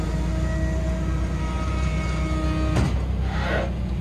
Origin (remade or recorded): recorded